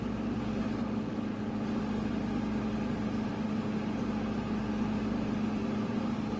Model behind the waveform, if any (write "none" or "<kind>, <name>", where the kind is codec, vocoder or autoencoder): none